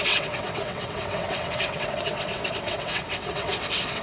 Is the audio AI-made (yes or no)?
yes